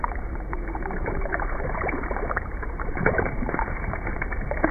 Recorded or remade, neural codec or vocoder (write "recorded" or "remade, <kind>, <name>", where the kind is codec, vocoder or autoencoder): remade, vocoder, BigVGAN v2